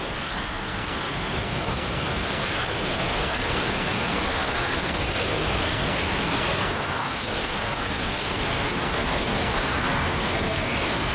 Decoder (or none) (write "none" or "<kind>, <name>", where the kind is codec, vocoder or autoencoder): codec, SNAC